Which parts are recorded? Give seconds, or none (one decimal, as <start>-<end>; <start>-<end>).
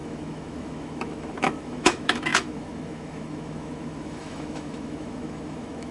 none